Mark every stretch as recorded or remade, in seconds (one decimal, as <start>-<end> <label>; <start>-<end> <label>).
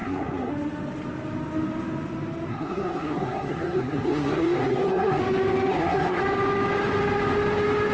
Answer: 0.0-0.5 remade; 0.5-2.5 recorded; 2.5-5.2 remade; 5.2-5.7 recorded; 5.7-6.2 remade; 6.2-7.9 recorded